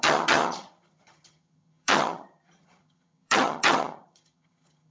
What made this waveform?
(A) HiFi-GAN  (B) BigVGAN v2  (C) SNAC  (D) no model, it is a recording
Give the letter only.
A